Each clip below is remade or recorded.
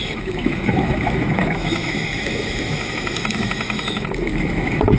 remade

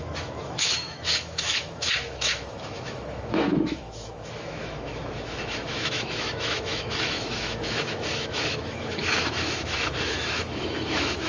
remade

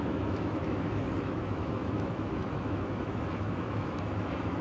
remade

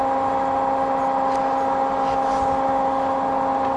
recorded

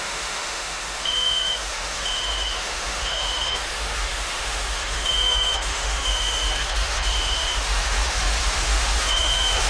remade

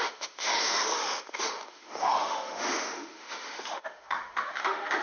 remade